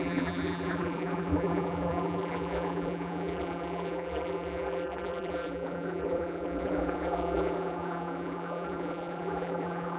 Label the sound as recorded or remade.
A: remade